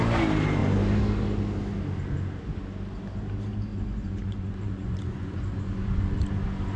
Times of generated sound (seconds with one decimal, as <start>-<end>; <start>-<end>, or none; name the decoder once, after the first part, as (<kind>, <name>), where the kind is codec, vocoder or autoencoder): 3.7-6.0 (vocoder, Vocos)